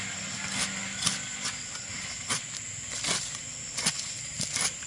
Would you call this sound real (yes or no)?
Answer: yes